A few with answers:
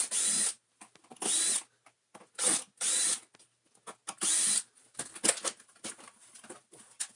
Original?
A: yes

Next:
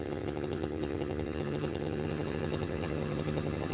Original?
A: no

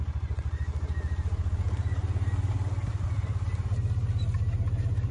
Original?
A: yes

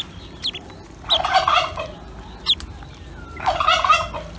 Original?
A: yes